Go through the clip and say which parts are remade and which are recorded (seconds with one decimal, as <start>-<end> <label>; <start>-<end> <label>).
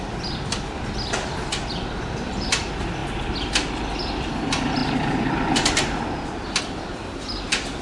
0.0-3.0 remade; 3.0-3.7 recorded; 3.7-4.8 remade; 4.8-6.6 recorded; 6.6-7.8 remade